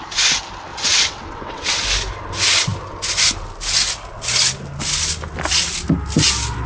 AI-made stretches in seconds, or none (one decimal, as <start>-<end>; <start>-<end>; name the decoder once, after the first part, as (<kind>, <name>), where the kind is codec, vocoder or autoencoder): 0.7-1.7 (vocoder, WaveNeXt)